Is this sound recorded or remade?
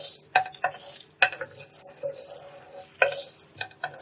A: recorded